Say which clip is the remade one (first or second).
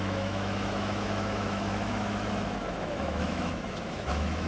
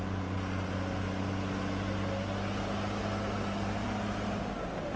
first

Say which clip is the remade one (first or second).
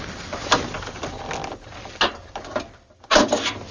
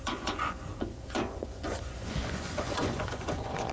second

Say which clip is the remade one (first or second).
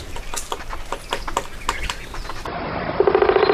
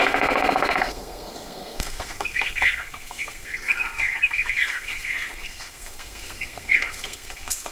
second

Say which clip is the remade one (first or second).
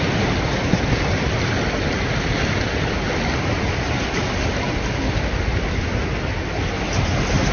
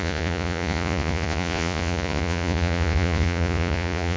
second